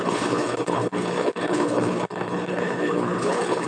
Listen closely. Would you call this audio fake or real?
fake